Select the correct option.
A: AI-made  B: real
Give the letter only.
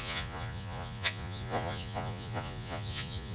A